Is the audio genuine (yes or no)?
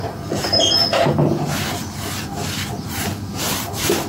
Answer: no